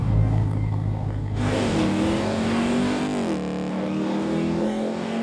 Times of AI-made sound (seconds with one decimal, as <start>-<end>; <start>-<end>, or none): 0.0-3.0; 3.7-5.2

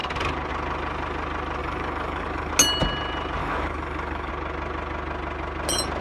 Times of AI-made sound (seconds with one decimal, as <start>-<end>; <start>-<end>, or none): 1.6-2.5; 3.4-4.3

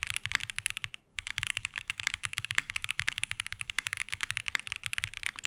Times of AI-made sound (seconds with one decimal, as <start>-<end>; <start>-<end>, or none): 1.1-4.3

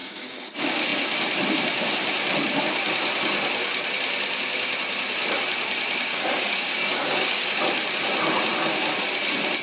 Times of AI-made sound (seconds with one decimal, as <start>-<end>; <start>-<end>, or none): 0.0-0.5; 6.1-7.6

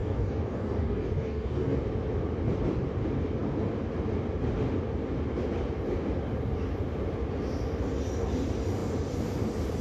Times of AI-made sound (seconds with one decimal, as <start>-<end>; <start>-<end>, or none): 0.0-1.8

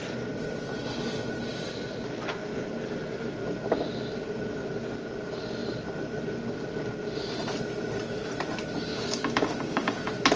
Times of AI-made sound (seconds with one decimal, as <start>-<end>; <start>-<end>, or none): 8.9-10.0

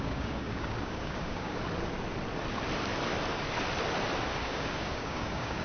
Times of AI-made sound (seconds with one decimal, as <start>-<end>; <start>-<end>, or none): 0.0-1.6; 4.4-5.6